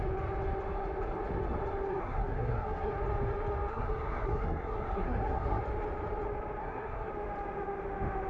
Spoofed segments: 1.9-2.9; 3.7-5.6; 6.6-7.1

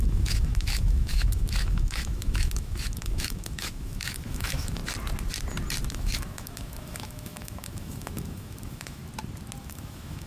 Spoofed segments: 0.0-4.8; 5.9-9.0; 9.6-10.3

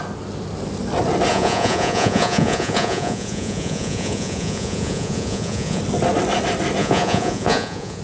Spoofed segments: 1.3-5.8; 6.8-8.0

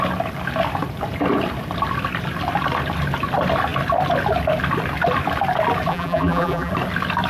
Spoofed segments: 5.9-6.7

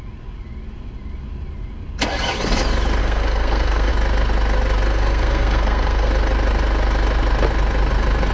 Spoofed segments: 3.0-3.9; 4.9-6.1

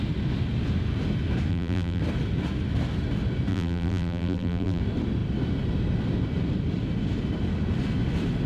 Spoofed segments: 1.5-2.0; 3.5-4.8

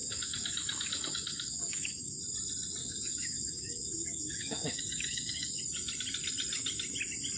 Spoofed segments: 0.0-2.2; 2.8-5.6